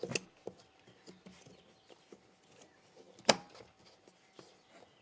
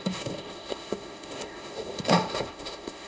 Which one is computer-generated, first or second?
second